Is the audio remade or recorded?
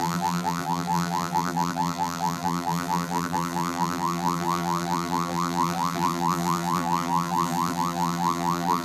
remade